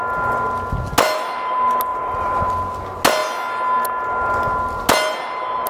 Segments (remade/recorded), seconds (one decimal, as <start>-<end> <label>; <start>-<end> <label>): 0.0-1.9 recorded; 1.9-2.5 remade; 2.5-5.7 recorded